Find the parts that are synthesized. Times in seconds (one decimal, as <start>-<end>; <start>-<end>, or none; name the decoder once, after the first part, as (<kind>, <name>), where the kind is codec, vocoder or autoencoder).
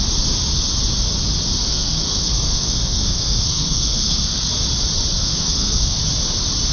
1.7-4.5 (codec, SNAC); 5.2-6.0